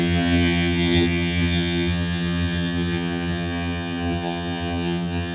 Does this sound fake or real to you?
fake